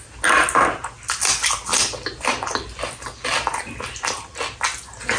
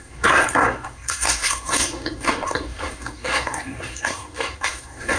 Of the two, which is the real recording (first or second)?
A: first